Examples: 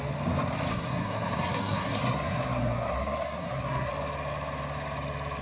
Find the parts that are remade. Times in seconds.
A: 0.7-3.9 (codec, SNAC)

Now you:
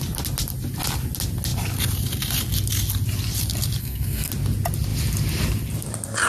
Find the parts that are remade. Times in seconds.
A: 3.8-4.3 (codec, SNAC)

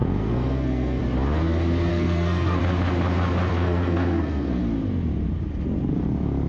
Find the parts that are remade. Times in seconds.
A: 0.0-1.0 (codec, SNAC); 1.9-2.6; 3.5-4.6